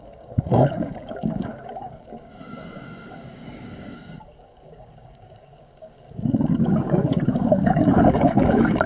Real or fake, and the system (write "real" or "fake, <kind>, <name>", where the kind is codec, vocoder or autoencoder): fake, codec, DAC